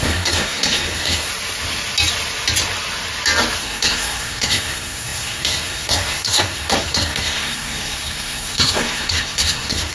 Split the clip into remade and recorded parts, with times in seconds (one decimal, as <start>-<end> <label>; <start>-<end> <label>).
0.0-1.3 remade; 1.3-3.6 recorded; 3.6-9.9 remade